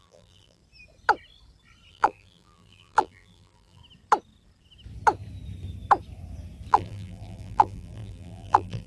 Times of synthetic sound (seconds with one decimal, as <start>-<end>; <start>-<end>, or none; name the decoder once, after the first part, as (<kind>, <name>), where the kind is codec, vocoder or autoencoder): 0.0-0.6 (vocoder, BigVGAN v2); 1.9-3.8; 6.7-8.9